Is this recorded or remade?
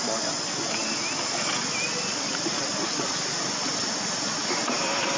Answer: recorded